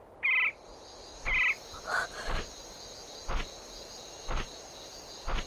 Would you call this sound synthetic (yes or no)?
no